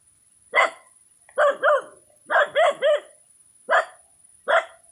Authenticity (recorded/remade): recorded